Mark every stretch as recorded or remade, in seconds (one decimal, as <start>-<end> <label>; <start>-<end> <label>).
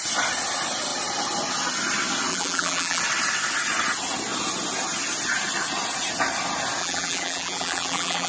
0.0-2.3 recorded; 2.3-3.0 remade; 3.0-6.8 recorded; 6.8-8.3 remade